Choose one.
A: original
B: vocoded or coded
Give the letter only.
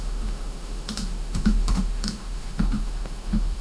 B